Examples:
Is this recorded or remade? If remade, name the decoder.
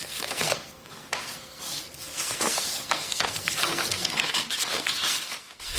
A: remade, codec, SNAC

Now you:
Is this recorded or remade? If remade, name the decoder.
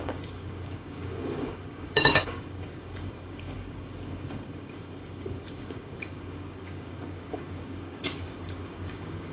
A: remade, codec, DAC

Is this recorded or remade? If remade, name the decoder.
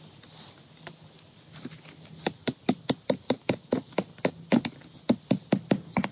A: recorded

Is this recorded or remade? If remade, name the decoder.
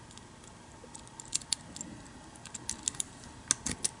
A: recorded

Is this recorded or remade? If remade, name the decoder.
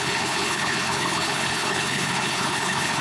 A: remade, codec, HILCodec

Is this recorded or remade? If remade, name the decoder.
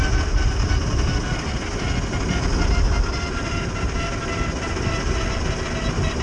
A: recorded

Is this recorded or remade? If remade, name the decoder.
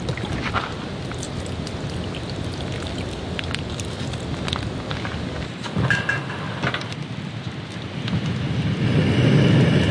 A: recorded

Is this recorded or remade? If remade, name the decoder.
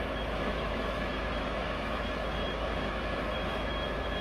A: remade, autoencoder, DAC-VAE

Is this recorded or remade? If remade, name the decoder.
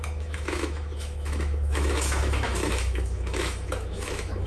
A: remade, autoencoder, DAC-VAE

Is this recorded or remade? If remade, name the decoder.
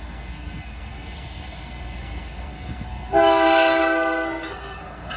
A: remade, codec, SNAC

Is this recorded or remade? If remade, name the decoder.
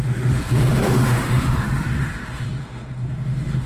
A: remade, autoencoder, DAC-VAE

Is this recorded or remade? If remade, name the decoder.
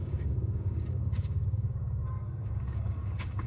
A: remade, codec, DAC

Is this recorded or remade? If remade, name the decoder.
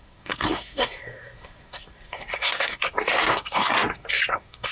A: remade, codec, SNAC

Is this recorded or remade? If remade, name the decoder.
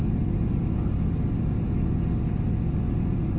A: recorded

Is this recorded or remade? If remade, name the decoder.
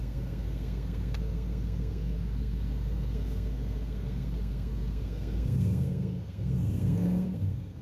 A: remade, codec, SNAC